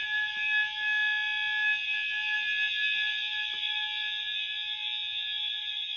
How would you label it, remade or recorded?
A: recorded